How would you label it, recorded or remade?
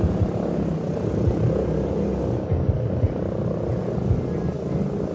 recorded